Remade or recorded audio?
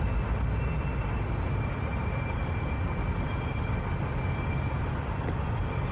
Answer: recorded